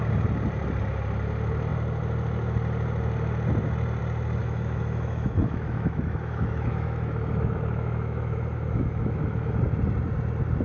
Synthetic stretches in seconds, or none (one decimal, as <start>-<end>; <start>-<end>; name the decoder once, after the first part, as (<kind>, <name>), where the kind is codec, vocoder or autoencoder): 4.4-9.6 (autoencoder, DAC-VAE)

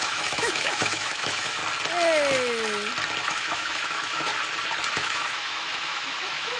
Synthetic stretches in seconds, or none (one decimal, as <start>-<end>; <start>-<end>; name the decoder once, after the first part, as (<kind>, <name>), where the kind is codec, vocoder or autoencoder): 0.0-1.6 (autoencoder, DAC-VAE); 3.2-4.3; 4.9-6.6

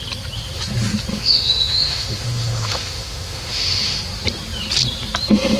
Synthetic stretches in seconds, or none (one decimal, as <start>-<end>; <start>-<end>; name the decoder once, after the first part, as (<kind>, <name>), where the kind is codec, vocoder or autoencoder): 1.1-4.0 (autoencoder, DAC-VAE)

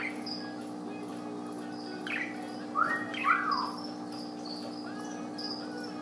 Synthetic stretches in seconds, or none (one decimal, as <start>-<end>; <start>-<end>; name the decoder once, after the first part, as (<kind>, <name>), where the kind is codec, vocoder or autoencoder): none

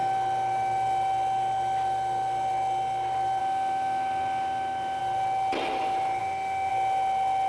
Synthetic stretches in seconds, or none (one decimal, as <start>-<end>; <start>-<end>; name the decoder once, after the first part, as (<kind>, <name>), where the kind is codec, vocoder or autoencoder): 3.4-5.0 (autoencoder, DAC-VAE); 6.2-6.7

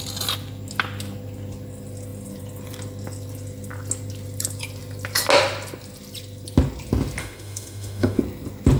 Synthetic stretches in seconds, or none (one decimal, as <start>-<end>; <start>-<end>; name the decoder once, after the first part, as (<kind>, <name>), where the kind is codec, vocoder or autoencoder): 7.2-8.2 (autoencoder, DAC-VAE)

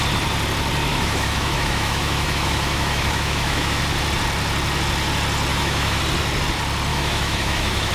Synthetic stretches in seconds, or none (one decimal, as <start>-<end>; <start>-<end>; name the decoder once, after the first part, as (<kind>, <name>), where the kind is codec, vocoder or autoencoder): 0.9-3.8 (autoencoder, DAC-VAE); 5.5-6.0; 6.9-7.9